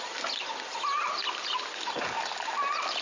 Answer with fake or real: real